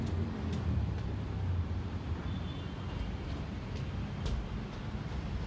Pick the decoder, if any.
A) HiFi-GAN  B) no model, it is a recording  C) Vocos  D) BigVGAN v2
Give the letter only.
D